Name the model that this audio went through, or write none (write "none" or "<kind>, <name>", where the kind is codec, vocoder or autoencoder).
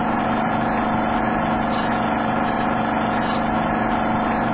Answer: none